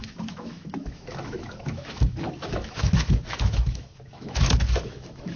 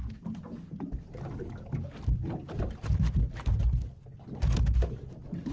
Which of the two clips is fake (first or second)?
first